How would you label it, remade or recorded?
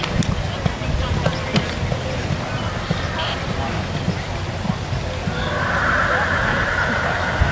recorded